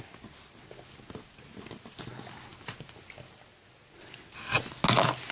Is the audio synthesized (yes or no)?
no